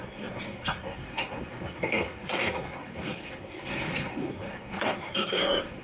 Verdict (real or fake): fake